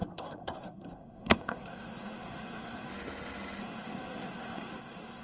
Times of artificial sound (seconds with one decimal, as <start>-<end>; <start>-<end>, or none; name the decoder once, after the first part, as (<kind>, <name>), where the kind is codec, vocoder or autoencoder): 0.0-2.9 (codec, SNAC); 3.6-5.2